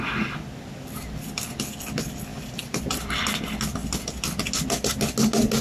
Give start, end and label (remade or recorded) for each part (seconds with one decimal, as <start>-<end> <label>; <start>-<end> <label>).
0.0-2.3 recorded; 2.3-2.8 remade; 2.8-5.6 recorded